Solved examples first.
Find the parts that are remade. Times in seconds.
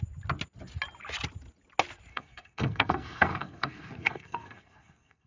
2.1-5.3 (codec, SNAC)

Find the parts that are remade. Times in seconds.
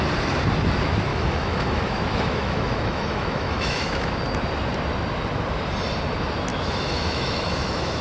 1.1-4.2 (autoencoder, DAC-VAE); 6.5-8.0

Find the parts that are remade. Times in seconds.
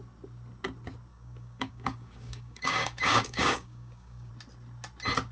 1.1-4.3 (codec, DAC)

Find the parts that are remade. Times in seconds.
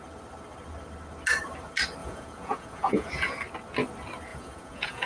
2.0-3.1 (vocoder, Vocos); 4.3-5.1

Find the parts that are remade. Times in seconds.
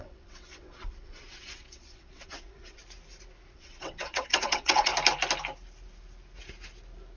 0.0-2.8 (vocoder, WaveNeXt); 3.5-4.9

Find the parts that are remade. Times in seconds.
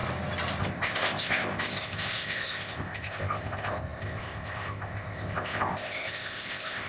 0.6-6.9 (codec, ZipCodec)